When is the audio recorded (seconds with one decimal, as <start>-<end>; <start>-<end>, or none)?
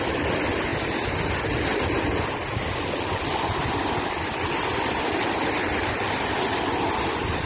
0.0-7.5